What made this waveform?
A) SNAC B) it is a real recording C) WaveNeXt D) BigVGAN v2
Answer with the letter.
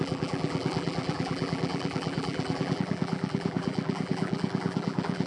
D